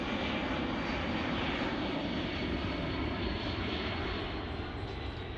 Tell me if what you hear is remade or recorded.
recorded